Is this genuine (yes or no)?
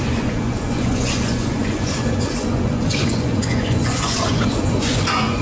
no